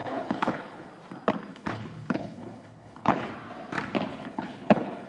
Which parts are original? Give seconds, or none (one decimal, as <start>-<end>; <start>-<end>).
0.9-1.5; 3.3-4.1